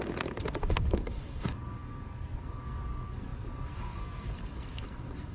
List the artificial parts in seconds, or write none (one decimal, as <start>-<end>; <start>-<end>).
0.0-5.3